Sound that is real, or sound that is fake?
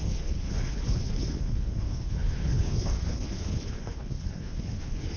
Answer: fake